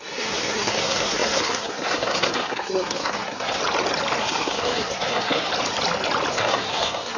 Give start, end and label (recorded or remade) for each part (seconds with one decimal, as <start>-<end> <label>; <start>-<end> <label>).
0.0-3.6 remade; 3.6-4.2 recorded; 4.2-5.5 remade; 5.5-6.3 recorded; 6.3-7.2 remade